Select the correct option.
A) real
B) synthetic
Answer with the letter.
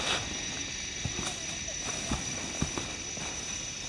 A